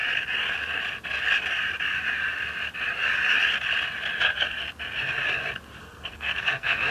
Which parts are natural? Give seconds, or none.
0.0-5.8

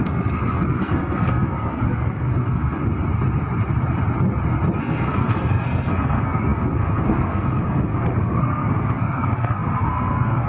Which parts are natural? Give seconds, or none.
2.8-4.8

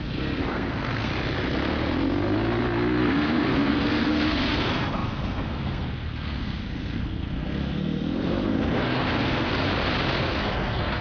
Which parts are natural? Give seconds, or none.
1.1-3.0; 9.5-10.2

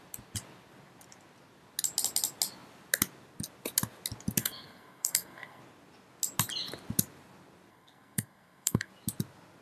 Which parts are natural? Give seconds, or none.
0.0-4.4; 5.6-7.7; 8.9-9.6

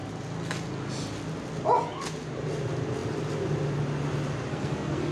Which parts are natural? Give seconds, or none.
0.0-4.5

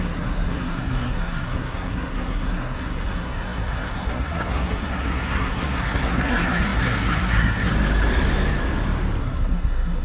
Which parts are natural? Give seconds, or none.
7.7-9.2

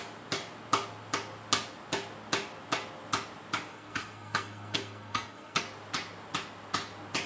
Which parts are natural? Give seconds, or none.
0.0-3.7; 5.6-7.3

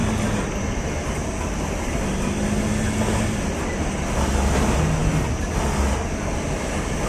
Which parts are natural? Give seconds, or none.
0.0-7.1